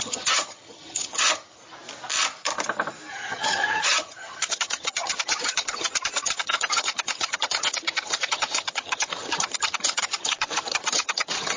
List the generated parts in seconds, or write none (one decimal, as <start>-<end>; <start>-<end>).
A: 0.0-1.6; 3.1-11.6